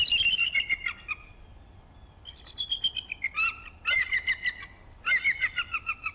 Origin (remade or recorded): recorded